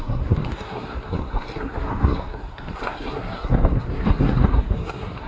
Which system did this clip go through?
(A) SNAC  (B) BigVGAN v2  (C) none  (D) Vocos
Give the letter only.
A